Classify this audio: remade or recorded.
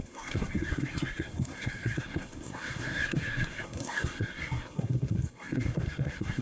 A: remade